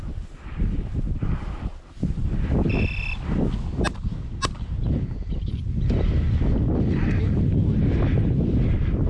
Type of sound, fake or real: real